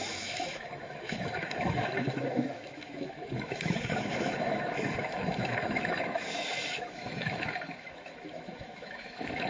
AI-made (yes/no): yes